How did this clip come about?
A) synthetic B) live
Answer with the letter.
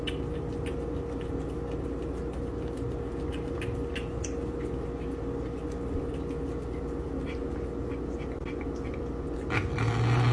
B